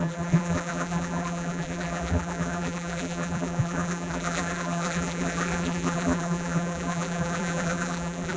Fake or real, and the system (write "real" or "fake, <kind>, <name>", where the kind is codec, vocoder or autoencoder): fake, vocoder, BigVGAN v2